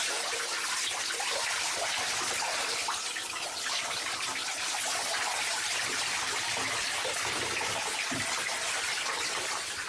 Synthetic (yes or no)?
no